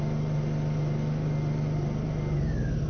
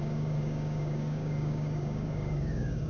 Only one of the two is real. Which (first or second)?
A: first